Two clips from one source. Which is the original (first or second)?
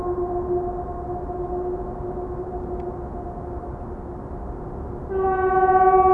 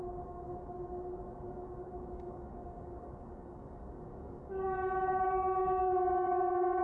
first